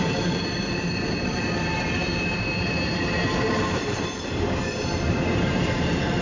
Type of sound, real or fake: fake